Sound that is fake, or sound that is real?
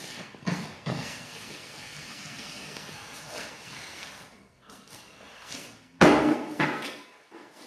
fake